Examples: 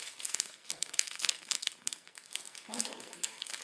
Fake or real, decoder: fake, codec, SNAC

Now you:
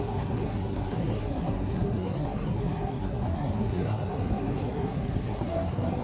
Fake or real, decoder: fake, codec, SNAC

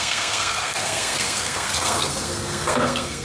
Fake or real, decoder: fake, codec, SNAC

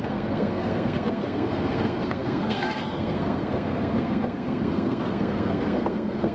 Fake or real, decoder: fake, codec, SNAC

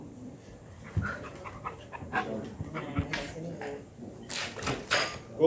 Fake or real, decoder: real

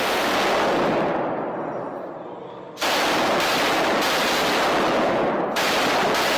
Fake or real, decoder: real